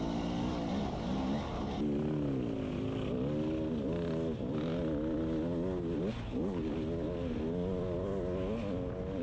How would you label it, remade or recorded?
recorded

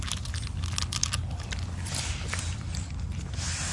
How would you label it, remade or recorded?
recorded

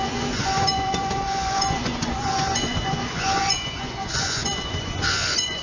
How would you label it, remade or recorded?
remade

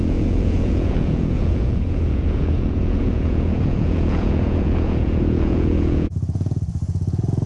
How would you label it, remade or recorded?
remade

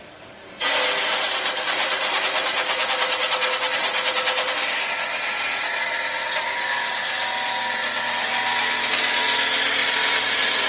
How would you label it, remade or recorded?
recorded